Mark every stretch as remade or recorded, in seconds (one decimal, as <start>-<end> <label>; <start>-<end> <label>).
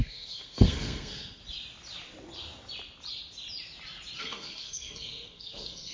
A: 0.0-1.4 remade; 1.4-4.2 recorded; 4.2-5.9 remade